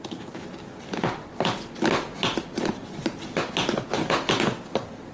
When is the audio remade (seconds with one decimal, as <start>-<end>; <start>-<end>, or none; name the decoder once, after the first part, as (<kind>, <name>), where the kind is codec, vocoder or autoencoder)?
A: none